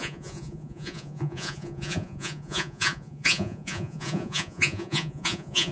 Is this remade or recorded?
remade